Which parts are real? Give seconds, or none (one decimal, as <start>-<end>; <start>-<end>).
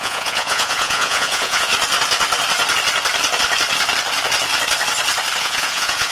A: 1.7-5.4